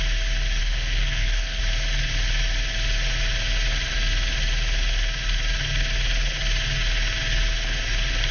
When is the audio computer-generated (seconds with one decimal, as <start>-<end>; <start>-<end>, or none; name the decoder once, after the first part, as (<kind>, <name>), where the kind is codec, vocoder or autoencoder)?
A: 0.6-1.6 (codec, SNAC)